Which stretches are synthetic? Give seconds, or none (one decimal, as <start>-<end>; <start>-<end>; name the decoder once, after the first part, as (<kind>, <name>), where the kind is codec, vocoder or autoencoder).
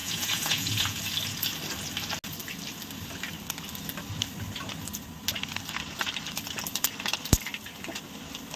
0.0-1.0 (vocoder, Vocos)